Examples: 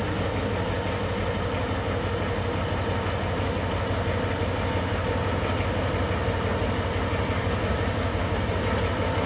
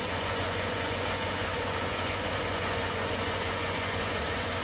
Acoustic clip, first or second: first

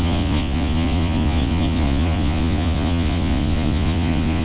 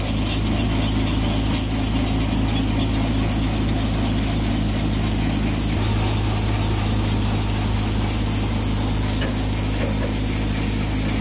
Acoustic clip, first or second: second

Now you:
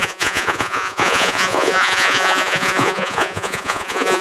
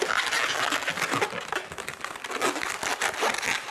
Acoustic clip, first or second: second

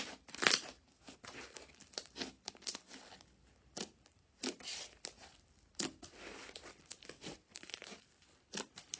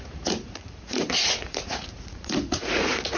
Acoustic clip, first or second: first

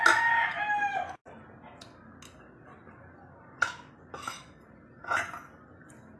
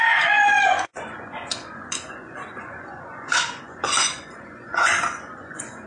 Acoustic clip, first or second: first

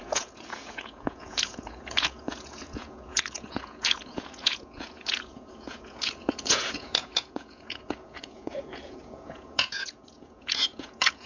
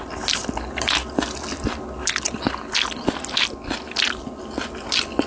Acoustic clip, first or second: second